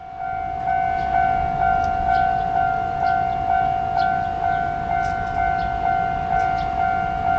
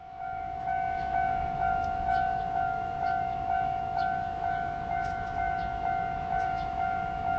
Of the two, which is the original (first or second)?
first